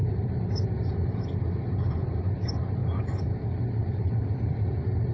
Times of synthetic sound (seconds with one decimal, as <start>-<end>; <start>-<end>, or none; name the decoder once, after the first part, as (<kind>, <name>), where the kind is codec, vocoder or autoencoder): 0.0-5.1 (vocoder, BigVGAN v2)